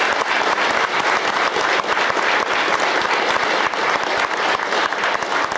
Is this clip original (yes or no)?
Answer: yes